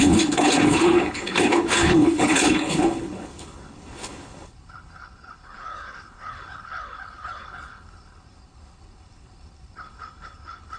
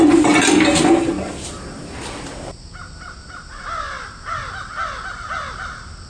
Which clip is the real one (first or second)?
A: second